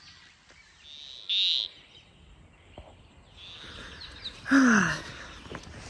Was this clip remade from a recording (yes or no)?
no